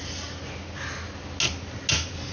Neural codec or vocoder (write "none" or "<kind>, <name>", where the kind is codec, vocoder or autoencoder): none